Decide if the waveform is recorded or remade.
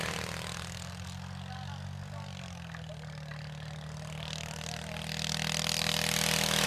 recorded